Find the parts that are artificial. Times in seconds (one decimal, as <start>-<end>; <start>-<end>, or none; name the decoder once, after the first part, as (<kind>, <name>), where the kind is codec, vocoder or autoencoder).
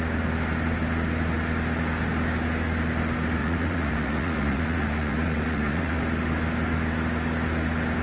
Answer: 3.4-6.0 (vocoder, Vocos)